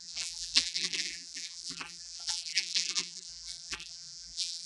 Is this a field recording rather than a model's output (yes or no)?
no